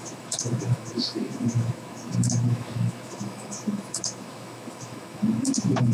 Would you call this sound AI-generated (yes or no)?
yes